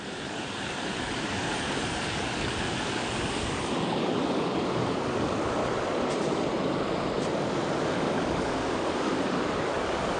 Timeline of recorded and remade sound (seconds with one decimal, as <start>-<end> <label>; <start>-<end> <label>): 0.0-5.6 remade; 5.6-7.9 recorded; 7.9-10.2 remade